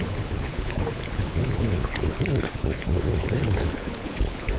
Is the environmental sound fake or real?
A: fake